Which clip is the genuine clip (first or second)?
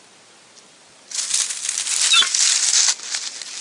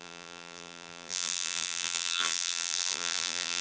first